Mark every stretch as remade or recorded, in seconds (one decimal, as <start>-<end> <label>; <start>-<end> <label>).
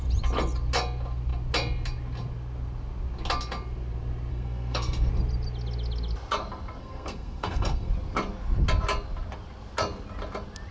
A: 0.0-4.3 recorded; 4.3-5.1 remade; 5.1-6.8 recorded; 6.8-7.9 remade; 7.9-10.7 recorded